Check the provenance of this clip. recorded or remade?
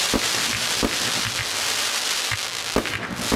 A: recorded